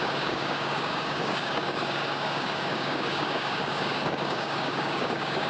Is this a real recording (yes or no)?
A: no